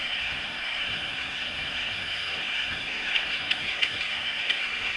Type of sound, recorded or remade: remade